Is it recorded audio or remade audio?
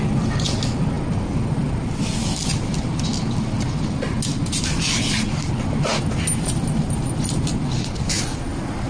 recorded